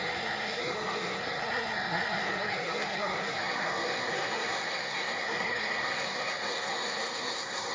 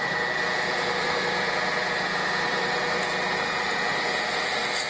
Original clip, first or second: second